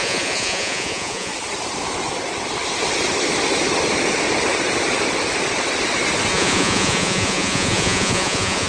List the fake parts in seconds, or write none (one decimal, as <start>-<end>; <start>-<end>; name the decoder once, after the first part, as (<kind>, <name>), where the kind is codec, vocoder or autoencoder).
0.0-1.3 (vocoder, Vocos); 6.3-8.7